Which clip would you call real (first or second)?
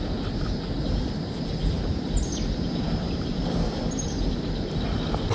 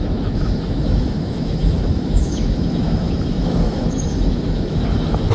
first